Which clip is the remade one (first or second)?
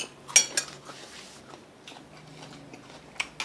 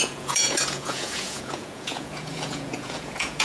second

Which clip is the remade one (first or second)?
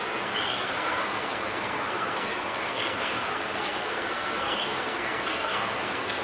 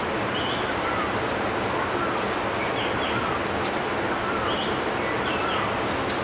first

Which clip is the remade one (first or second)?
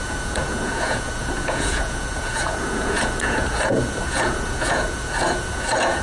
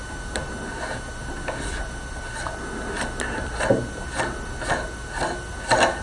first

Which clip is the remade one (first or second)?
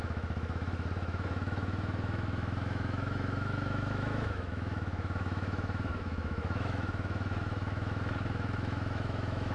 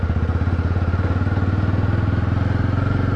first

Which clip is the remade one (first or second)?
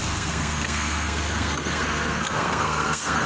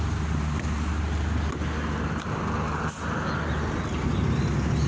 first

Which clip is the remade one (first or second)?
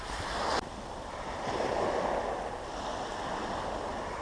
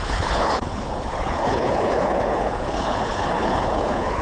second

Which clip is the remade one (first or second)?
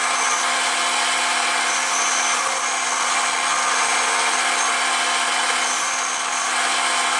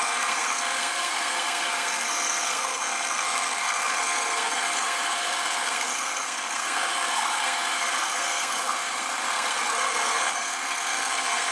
second